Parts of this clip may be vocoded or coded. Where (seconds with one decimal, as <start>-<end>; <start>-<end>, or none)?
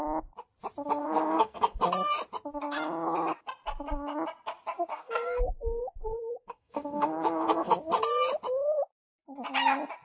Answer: 1.0-1.8; 4.9-7.7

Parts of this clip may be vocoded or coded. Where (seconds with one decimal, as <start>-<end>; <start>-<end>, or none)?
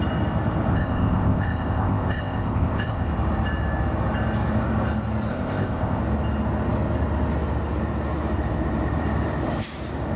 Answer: 0.7-3.1; 5.3-6.0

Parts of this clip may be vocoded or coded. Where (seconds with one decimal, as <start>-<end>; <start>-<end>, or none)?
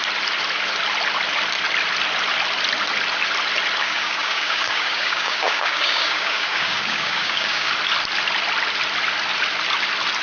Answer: 3.8-7.7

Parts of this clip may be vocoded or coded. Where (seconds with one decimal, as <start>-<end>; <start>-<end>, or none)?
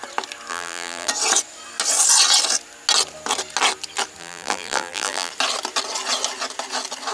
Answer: 0.5-1.1; 4.2-5.3